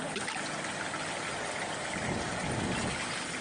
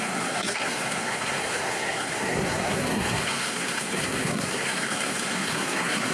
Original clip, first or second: first